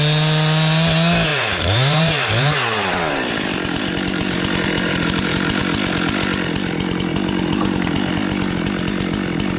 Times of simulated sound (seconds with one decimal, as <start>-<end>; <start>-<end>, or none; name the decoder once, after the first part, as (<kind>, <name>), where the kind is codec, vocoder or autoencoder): 1.3-5.6 (vocoder, BigVGAN v2)